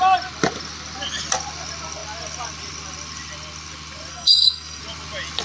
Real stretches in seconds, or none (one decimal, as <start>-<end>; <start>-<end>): 0.0-4.1; 4.8-5.4